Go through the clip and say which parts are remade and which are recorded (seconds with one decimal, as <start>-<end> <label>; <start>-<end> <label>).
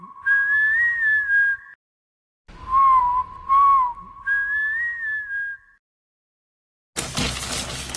0.0-8.0 recorded